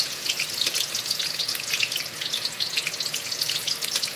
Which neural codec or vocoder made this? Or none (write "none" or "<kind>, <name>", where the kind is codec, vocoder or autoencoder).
vocoder, Vocos